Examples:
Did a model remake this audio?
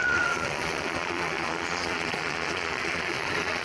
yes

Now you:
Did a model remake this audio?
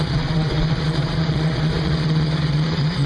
yes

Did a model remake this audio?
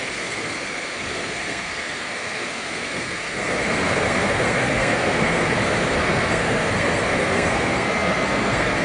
yes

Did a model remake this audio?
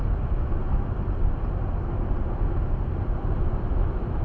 no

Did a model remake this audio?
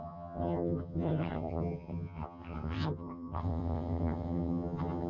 yes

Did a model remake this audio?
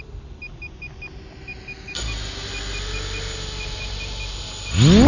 no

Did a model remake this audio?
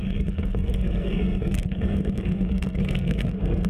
yes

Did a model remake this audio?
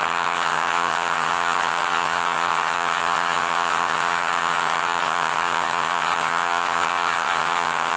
yes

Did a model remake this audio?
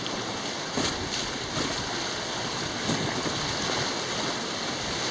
no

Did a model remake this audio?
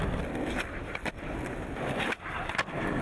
no